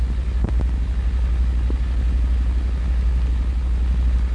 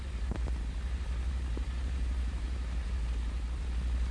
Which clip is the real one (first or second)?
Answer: first